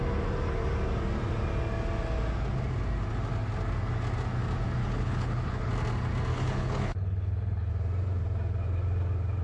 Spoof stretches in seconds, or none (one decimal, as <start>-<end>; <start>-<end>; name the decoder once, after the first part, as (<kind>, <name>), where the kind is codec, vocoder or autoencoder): 4.8-5.7 (codec, HILCodec); 6.3-7.7